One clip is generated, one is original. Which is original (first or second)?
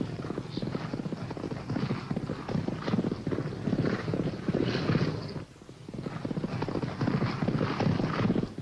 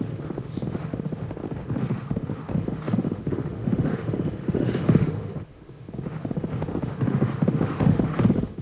first